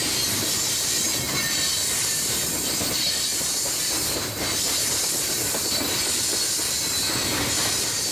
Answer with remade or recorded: recorded